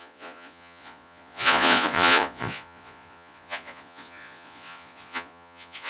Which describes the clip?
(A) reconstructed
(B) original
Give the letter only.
A